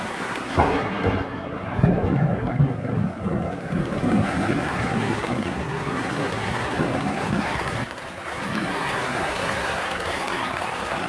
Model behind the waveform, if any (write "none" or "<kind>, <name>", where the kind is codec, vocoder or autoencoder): codec, SNAC